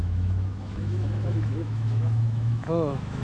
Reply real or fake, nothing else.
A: fake